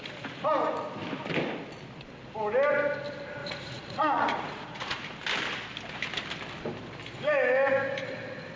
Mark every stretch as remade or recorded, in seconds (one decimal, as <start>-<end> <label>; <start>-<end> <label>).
0.0-3.4 recorded; 3.4-5.0 remade; 5.0-8.6 recorded